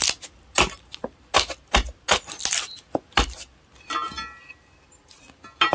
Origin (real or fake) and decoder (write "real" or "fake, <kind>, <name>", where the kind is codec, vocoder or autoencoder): real